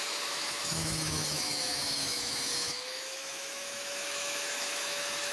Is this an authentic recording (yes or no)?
no